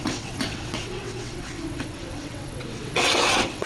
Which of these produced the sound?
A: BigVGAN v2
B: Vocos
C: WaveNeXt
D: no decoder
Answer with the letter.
C